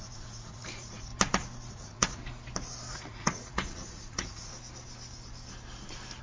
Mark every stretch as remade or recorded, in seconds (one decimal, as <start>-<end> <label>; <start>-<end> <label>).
0.0-1.1 remade; 1.1-1.7 recorded; 1.7-2.2 remade; 2.2-2.9 recorded; 2.9-4.5 remade; 4.5-6.2 recorded